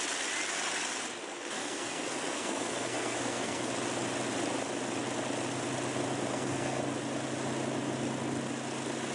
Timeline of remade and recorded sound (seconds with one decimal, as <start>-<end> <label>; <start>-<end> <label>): 0.0-1.2 recorded; 1.2-3.7 remade; 3.7-6.3 recorded; 6.3-6.8 remade; 6.8-9.1 recorded